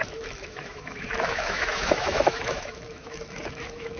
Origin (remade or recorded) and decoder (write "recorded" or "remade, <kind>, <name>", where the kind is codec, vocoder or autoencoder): remade, autoencoder, DAC-VAE